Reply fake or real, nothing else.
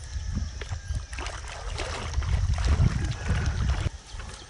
real